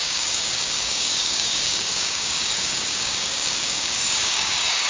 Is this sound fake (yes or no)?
yes